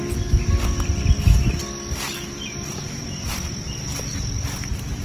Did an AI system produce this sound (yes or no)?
no